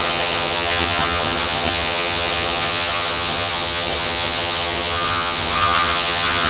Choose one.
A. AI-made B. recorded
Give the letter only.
A